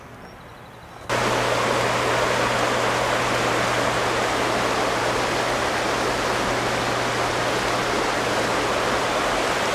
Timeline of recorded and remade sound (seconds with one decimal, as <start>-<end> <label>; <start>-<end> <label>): 0.0-7.8 recorded; 7.8-8.7 remade; 8.7-9.7 recorded